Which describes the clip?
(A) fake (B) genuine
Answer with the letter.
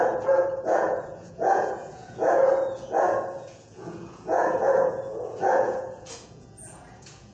A